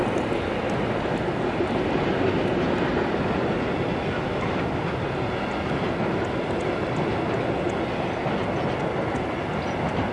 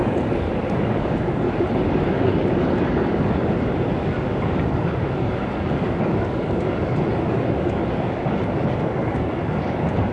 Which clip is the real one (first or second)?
first